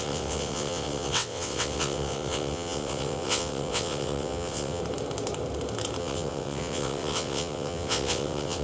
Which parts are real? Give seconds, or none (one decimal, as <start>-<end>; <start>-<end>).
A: 4.8-6.0